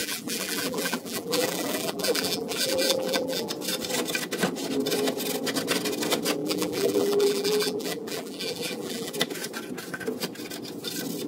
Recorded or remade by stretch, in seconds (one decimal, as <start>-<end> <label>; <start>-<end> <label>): 0.0-3.5 remade; 3.5-6.4 recorded; 6.4-9.1 remade; 9.1-11.3 recorded